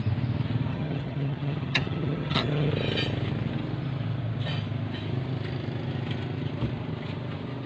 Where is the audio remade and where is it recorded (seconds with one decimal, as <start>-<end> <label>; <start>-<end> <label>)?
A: 0.0-0.7 recorded; 0.7-2.7 remade; 2.7-7.7 recorded